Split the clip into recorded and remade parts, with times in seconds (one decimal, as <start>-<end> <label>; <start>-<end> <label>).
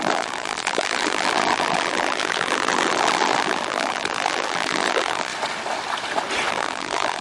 0.0-5.3 remade; 5.3-6.5 recorded; 6.5-7.2 remade